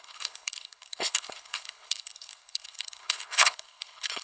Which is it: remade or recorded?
remade